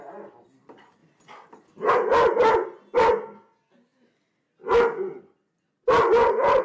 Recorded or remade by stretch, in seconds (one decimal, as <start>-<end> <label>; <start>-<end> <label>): 0.0-6.6 recorded